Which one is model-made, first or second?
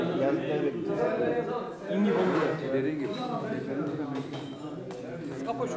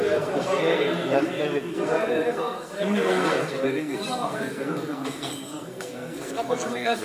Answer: second